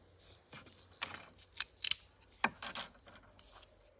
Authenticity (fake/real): real